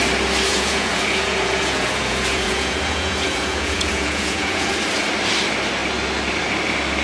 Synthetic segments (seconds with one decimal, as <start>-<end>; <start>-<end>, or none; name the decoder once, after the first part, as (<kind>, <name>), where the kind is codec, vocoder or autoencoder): 0.5-4.7 (vocoder, Vocos)